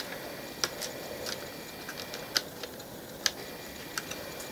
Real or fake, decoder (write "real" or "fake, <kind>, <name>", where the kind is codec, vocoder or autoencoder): real